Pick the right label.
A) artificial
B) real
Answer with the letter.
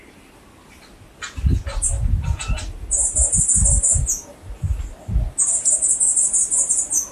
B